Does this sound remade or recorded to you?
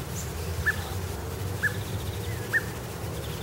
recorded